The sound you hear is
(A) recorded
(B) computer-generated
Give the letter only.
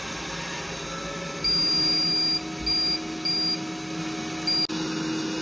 A